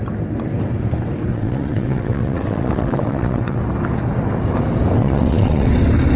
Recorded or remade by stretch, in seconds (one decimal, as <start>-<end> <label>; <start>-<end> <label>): 0.0-1.3 recorded; 1.3-3.6 remade; 3.6-5.0 recorded; 5.0-5.7 remade; 5.7-6.2 recorded